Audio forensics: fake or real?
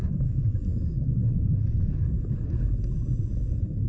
real